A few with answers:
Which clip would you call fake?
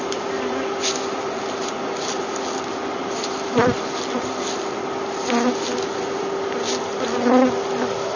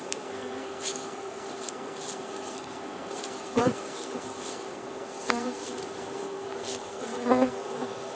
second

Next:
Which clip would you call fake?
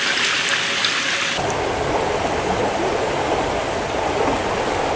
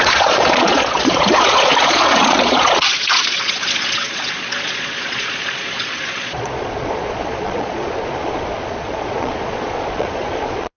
second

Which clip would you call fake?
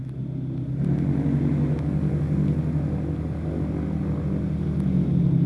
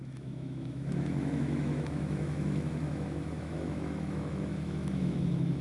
second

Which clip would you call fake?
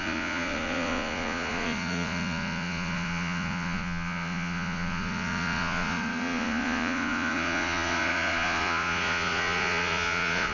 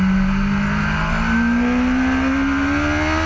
first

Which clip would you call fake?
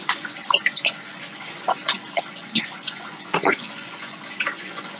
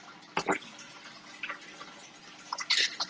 first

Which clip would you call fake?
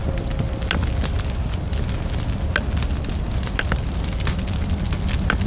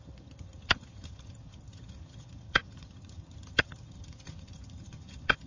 second